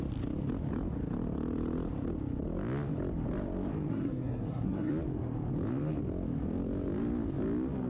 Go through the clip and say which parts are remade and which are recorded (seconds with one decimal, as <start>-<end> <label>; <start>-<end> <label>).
0.0-3.9 recorded; 3.9-4.9 remade; 4.9-7.9 recorded